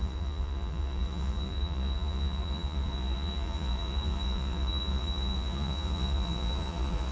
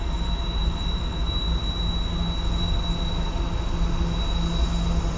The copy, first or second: first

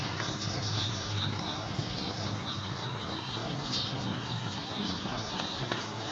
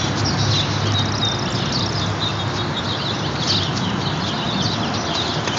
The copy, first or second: first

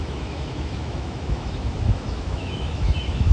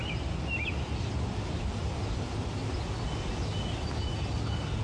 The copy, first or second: first